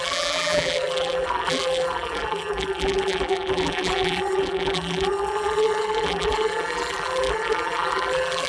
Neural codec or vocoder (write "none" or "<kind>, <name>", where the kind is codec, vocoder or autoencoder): vocoder, BigVGAN v2